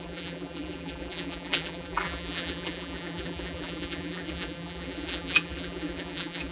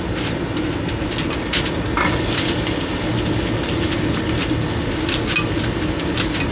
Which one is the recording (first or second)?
second